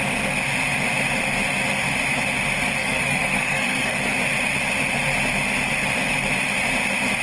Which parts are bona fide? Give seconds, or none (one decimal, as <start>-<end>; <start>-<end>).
0.0-2.8; 4.0-7.2